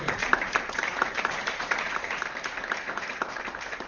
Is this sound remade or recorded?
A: remade